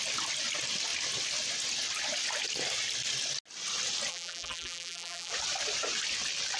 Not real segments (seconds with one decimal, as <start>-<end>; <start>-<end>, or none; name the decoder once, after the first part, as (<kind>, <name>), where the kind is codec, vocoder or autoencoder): 4.1-5.3 (vocoder, BigVGAN v2)